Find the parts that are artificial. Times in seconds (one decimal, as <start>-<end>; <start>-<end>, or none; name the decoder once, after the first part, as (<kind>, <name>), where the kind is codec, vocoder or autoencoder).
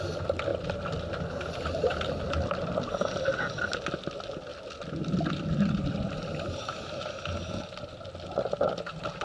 none